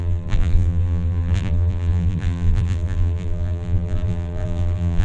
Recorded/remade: remade